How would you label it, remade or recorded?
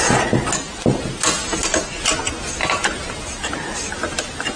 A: recorded